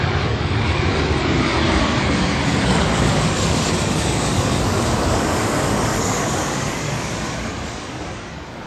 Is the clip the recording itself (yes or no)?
no